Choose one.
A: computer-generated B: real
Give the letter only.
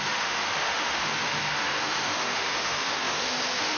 A